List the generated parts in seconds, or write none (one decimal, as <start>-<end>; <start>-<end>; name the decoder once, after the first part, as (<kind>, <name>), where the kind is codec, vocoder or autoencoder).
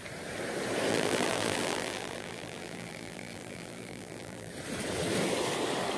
0.9-4.5 (vocoder, BigVGAN v2)